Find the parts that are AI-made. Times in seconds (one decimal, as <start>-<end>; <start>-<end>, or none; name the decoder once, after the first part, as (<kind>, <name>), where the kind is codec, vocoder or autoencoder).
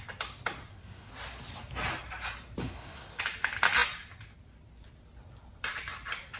0.6-1.1 (codec, SNAC); 2.6-3.2